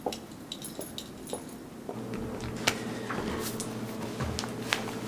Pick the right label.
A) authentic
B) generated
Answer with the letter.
A